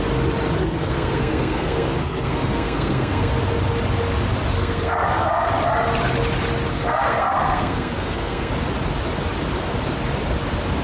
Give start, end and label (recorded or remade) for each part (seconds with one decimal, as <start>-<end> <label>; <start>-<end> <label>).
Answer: 0.0-0.6 recorded; 0.6-3.3 remade; 3.3-4.6 recorded; 4.6-5.5 remade; 5.5-6.7 recorded; 6.7-8.5 remade; 8.5-10.8 recorded